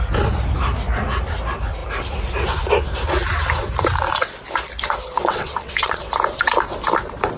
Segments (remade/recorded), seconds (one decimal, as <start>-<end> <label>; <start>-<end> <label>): 0.0-5.2 recorded; 5.2-6.0 remade; 6.0-7.4 recorded